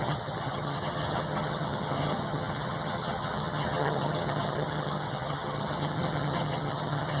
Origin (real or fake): fake